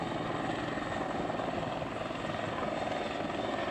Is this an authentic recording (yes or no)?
yes